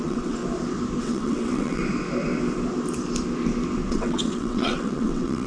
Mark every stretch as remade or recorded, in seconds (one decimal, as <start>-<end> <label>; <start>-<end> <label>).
0.0-0.4 remade; 0.4-1.0 recorded; 1.0-1.8 remade; 1.8-3.9 recorded; 3.9-5.5 remade